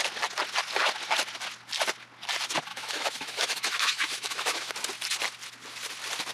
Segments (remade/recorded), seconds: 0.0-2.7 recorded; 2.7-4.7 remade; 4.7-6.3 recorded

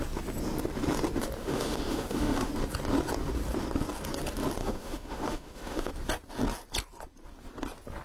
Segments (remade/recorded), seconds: 0.0-1.4 recorded; 1.4-2.5 remade; 2.5-4.6 recorded; 4.6-5.9 remade; 5.9-8.0 recorded

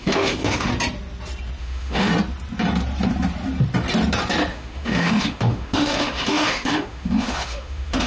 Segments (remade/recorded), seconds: 0.0-0.7 remade; 0.7-1.6 recorded; 1.6-2.1 remade; 2.1-4.5 recorded; 4.5-8.1 remade

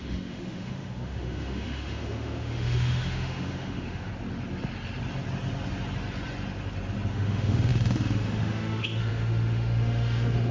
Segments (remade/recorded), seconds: 0.0-4.1 remade; 4.1-7.1 recorded; 7.1-10.5 remade